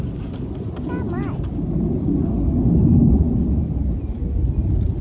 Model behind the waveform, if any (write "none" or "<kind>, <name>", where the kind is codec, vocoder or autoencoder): none